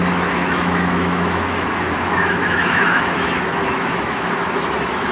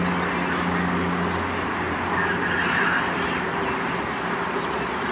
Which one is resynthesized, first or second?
first